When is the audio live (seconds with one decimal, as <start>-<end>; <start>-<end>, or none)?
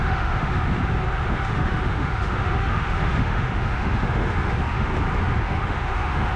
0.8-1.3; 4.9-5.4